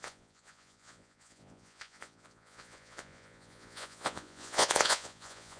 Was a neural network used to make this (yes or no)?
yes